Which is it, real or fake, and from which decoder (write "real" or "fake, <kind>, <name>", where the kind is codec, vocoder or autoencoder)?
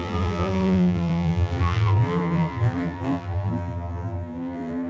fake, vocoder, BigVGAN v2